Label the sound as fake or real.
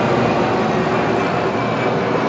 real